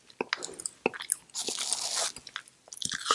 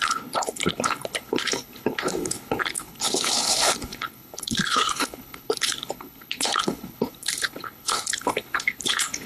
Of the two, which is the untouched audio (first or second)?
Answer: first